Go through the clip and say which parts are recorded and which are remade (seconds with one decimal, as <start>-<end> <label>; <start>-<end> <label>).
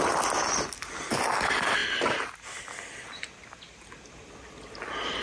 0.0-5.2 recorded